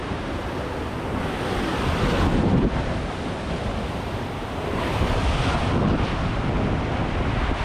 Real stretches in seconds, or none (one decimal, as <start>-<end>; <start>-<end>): 0.0-7.6